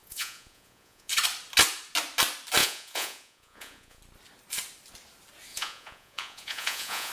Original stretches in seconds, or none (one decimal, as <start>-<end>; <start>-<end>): 1.1-2.6; 4.0-5.5